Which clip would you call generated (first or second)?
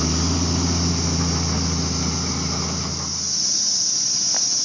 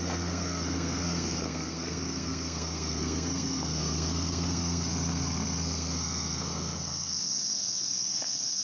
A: second